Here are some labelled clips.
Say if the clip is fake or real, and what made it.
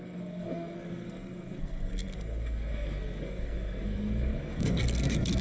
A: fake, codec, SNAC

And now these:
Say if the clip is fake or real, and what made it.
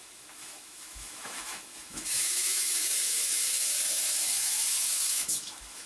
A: fake, autoencoder, DAC-VAE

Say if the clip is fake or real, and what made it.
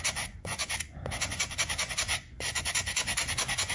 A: fake, vocoder, Vocos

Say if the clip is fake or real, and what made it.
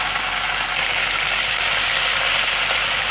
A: fake, vocoder, BigVGAN v2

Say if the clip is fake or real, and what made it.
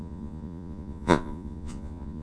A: fake, vocoder, Vocos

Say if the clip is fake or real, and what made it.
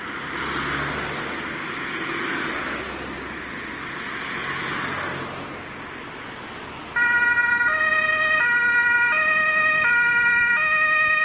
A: real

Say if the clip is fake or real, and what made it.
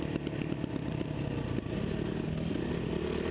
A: real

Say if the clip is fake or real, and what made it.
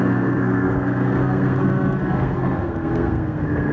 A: fake, codec, SNAC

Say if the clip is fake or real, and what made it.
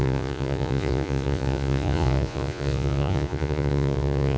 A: fake, vocoder, Vocos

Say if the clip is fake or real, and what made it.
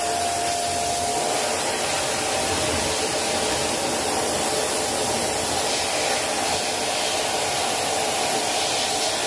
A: real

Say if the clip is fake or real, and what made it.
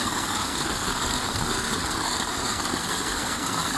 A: fake, codec, SNAC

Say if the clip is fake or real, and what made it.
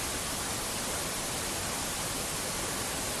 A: real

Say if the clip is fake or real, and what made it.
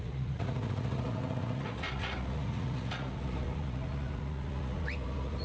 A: fake, vocoder, Vocos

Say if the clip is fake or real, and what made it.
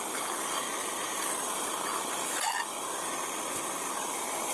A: real